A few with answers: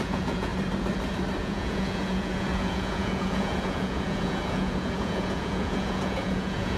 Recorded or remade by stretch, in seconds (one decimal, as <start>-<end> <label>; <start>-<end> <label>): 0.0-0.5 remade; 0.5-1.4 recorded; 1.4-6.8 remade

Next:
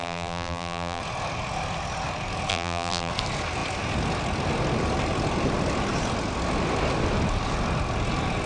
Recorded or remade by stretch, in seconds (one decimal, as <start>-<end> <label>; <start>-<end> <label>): 0.0-1.0 remade; 1.0-2.5 recorded; 2.5-3.1 remade; 3.1-8.5 recorded

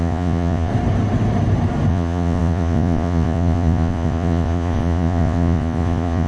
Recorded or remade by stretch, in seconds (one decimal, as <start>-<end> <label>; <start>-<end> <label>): 0.0-0.7 remade; 0.7-1.9 recorded; 1.9-6.3 remade

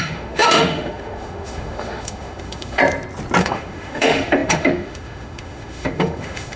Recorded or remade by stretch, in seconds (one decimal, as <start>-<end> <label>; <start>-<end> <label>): 0.0-2.8 remade; 2.8-3.4 recorded; 3.4-6.6 remade

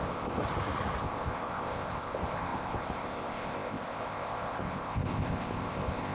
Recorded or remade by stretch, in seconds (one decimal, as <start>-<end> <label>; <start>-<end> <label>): 0.0-0.4 remade; 0.4-1.0 recorded; 1.0-6.1 remade

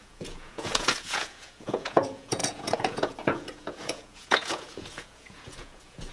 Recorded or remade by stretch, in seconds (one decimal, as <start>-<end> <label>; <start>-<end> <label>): 0.0-6.1 remade

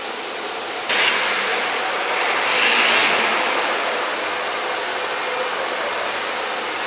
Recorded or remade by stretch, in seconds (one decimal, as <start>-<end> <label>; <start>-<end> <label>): 0.0-1.5 recorded; 1.5-2.5 remade; 2.5-3.0 recorded; 3.0-4.1 remade; 4.1-6.9 recorded